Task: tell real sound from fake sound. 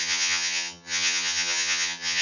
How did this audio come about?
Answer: fake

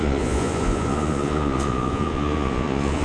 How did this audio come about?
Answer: fake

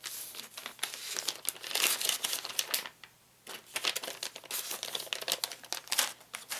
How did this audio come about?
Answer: real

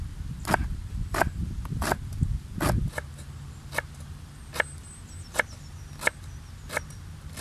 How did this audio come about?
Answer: real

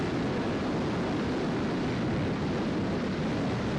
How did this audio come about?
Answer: real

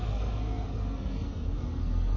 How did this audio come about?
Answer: fake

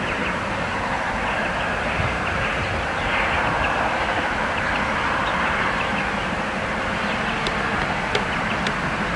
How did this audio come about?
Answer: real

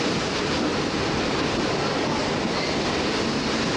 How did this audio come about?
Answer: real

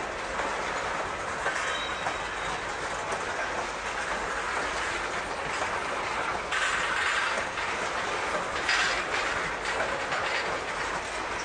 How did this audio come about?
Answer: real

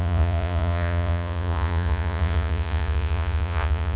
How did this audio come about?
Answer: fake